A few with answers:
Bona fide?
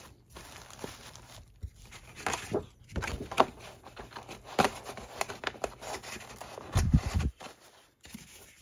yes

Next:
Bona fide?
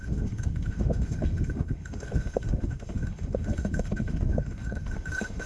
no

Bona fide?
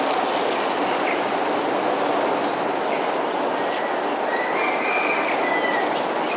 yes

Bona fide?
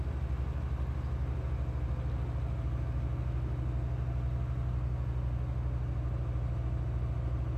yes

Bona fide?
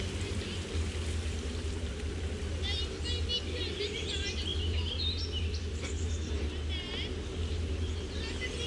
yes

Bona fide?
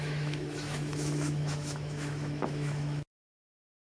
no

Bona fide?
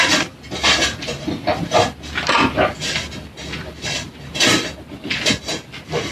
yes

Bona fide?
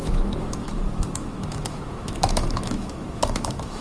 no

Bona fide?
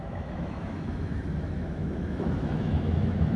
no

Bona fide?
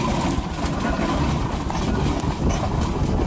yes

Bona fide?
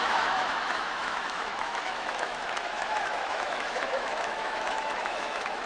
no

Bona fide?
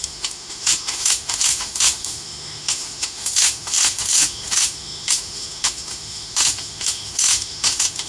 no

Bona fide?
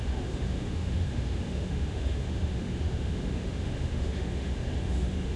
no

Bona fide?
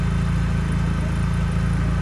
yes